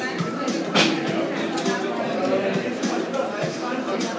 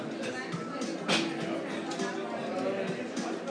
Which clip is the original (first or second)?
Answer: second